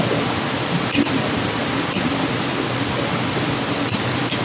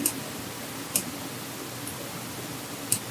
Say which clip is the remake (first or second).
first